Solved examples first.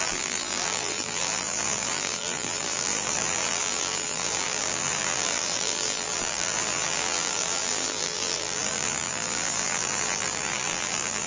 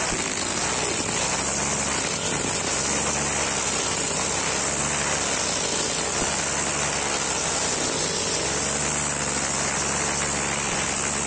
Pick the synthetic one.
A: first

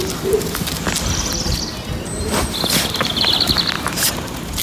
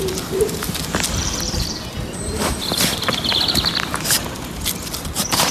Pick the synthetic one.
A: second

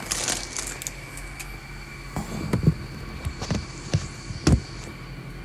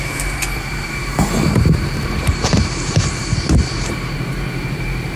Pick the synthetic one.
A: second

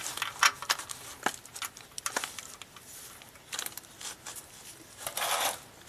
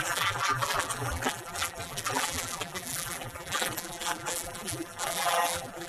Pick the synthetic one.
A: second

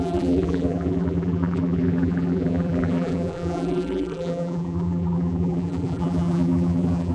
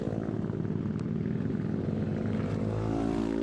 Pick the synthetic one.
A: first